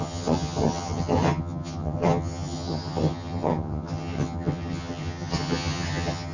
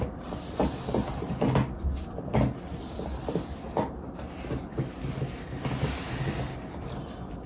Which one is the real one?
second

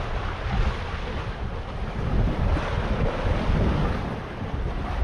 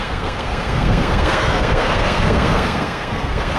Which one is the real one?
first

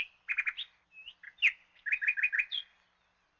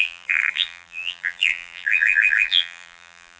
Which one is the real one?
first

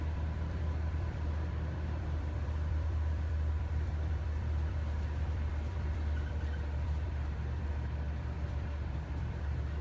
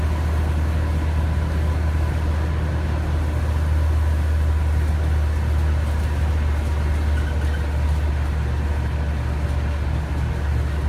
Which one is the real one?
second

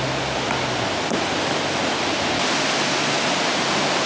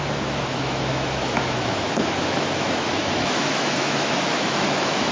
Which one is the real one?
first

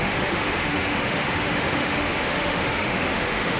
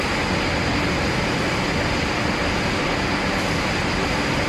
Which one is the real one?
second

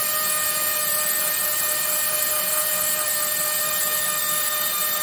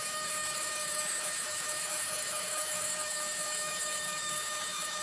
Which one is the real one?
first